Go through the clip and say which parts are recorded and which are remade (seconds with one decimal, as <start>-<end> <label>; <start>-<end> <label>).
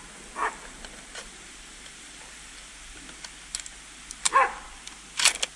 0.0-0.4 recorded; 0.4-2.7 remade; 2.7-5.6 recorded